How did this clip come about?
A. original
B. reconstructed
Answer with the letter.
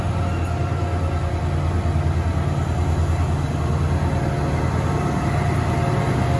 A